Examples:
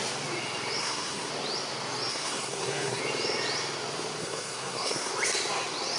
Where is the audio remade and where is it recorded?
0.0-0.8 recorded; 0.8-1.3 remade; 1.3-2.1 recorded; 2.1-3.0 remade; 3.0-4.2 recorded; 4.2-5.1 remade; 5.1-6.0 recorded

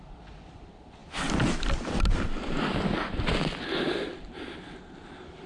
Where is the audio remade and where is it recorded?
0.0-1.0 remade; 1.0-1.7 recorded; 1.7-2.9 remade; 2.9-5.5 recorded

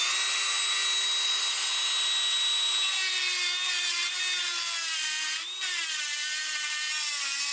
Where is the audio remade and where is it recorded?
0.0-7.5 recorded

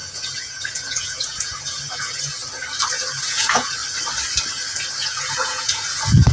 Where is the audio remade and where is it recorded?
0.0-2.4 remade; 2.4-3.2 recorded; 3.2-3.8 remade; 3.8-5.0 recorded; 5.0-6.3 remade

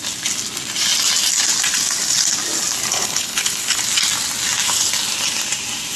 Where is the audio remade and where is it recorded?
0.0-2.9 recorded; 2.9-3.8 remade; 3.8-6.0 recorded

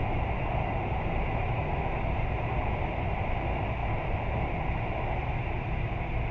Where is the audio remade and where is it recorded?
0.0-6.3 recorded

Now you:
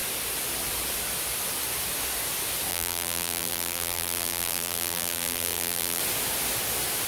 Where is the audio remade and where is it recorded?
0.0-2.7 recorded; 2.7-6.0 remade; 6.0-7.1 recorded

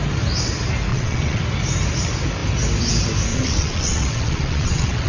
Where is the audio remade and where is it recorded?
0.0-0.9 recorded; 0.9-1.4 remade; 1.4-3.3 recorded; 3.3-5.1 remade